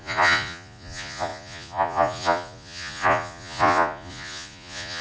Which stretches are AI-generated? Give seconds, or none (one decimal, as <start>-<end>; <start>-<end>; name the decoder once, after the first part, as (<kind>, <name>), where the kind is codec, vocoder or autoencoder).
0.0-5.0 (vocoder, Vocos)